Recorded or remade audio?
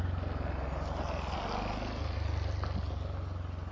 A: recorded